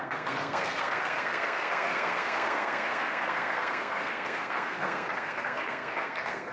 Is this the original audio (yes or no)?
no